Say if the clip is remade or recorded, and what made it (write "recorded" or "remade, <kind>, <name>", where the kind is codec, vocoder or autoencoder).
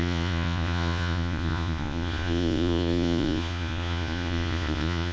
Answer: remade, vocoder, Vocos